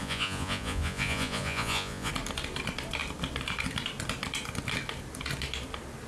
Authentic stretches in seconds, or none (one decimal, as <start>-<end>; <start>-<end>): 2.1-6.1